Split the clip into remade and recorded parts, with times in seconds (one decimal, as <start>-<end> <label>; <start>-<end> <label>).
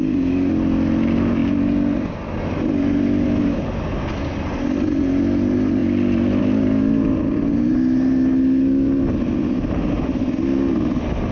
0.0-11.3 recorded